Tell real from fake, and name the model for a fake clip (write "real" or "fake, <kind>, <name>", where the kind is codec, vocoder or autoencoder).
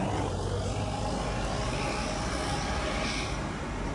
real